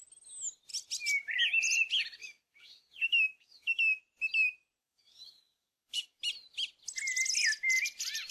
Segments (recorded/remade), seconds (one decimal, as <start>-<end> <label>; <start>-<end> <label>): 0.0-2.2 recorded; 2.2-4.0 remade; 4.0-4.8 recorded; 4.8-6.2 remade; 6.2-8.3 recorded